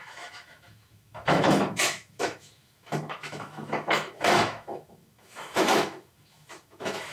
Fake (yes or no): yes